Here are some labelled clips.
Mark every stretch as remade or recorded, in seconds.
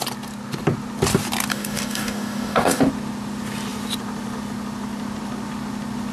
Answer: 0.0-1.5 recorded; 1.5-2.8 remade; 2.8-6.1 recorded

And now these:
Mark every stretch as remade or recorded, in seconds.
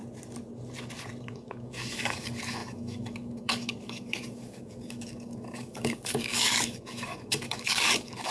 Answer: 0.0-1.3 recorded; 1.3-8.3 remade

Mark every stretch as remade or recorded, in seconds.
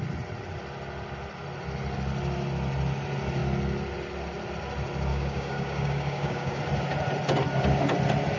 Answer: 0.0-5.1 recorded; 5.1-6.6 remade; 6.6-8.4 recorded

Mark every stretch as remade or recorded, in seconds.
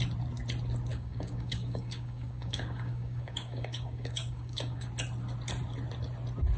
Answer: 0.0-0.9 recorded; 0.9-4.9 remade; 4.9-6.6 recorded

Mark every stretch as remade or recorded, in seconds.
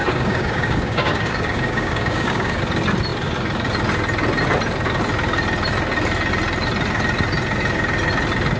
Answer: 0.0-2.6 remade; 2.6-8.6 recorded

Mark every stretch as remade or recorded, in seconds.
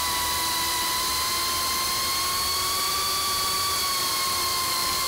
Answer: 0.0-4.5 recorded; 4.5-5.1 remade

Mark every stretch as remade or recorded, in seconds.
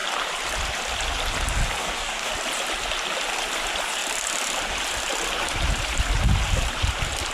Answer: 0.0-1.8 recorded; 1.8-2.3 remade; 2.3-7.3 recorded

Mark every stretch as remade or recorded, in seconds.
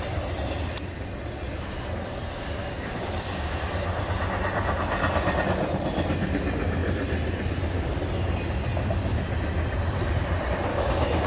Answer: 0.0-2.6 recorded; 2.6-3.5 remade; 3.5-10.7 recorded; 10.7-11.3 remade